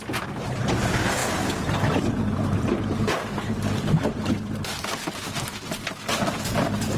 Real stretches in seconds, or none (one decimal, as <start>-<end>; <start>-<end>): 0.0-7.0